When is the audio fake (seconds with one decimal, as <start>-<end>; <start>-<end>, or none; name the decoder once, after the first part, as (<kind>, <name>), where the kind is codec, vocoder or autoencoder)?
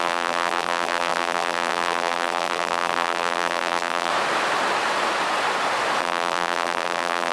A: 0.0-4.1 (vocoder, BigVGAN v2); 6.0-7.3